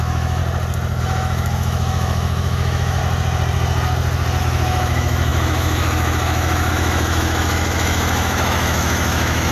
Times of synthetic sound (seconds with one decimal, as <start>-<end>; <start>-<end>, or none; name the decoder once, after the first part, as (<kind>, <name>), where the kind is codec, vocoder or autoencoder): 0.0-0.4 (autoencoder, DAC-VAE); 1.0-3.0; 4.4-9.5